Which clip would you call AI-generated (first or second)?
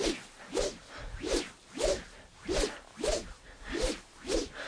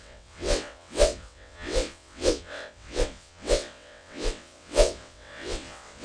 second